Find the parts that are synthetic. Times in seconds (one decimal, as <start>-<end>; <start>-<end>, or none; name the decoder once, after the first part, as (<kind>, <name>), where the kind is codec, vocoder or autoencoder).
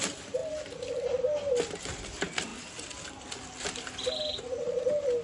none